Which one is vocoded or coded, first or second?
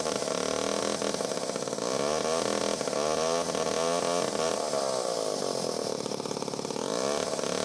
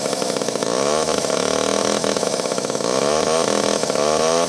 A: second